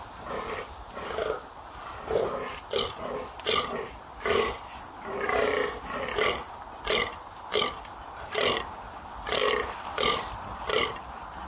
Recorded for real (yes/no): yes